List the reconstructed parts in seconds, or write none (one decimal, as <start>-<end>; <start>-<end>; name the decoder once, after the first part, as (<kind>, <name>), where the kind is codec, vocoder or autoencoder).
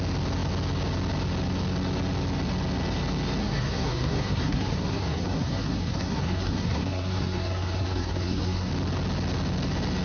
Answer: 3.4-8.7 (codec, SNAC)